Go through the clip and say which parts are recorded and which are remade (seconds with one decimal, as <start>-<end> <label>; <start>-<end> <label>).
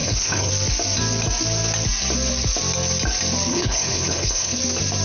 0.0-0.5 remade; 0.5-3.5 recorded; 3.5-4.6 remade; 4.6-5.0 recorded